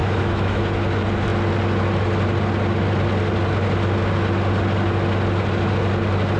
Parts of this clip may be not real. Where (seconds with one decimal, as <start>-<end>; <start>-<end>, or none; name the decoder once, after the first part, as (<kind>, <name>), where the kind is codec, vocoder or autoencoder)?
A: 0.0-0.6 (autoencoder, DAC-VAE)